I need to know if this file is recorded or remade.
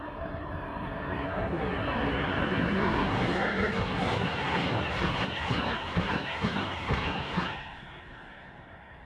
remade